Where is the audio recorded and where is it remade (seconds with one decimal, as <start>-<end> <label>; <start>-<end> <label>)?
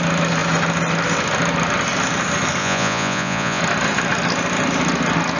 0.0-2.6 recorded; 2.6-3.6 remade; 3.6-5.4 recorded